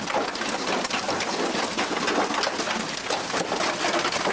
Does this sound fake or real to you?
real